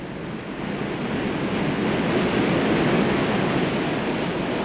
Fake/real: real